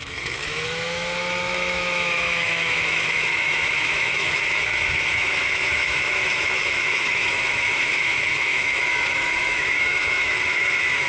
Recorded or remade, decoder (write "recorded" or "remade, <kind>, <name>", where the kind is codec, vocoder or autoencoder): remade, autoencoder, DAC-VAE